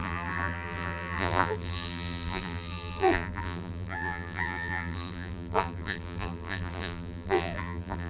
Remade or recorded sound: remade